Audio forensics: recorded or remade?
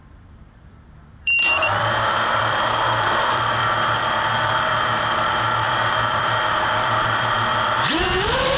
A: remade